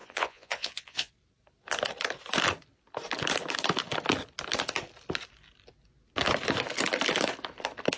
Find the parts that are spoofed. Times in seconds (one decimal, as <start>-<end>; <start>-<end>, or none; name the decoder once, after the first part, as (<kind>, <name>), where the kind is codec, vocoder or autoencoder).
0.0-1.1 (vocoder, Vocos)

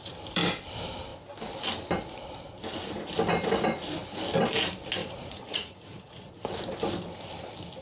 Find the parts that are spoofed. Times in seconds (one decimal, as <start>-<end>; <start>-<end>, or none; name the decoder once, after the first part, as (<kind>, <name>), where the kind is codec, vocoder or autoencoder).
5.0-6.3 (vocoder, Vocos)

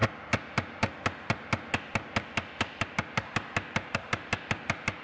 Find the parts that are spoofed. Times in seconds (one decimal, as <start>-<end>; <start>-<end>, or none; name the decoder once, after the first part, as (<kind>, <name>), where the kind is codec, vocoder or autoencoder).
none